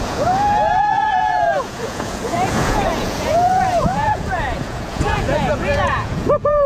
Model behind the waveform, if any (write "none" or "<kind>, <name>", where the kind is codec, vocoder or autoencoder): vocoder, Vocos